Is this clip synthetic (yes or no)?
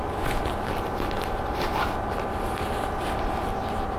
no